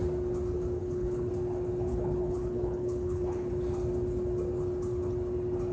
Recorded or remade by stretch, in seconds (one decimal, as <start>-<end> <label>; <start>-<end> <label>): 0.0-0.8 recorded; 0.8-1.3 remade; 1.3-1.9 recorded; 1.9-3.5 remade; 3.5-5.7 recorded